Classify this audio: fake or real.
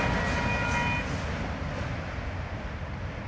real